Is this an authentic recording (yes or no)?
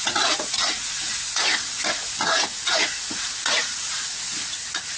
no